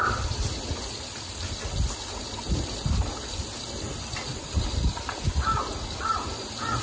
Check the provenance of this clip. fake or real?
real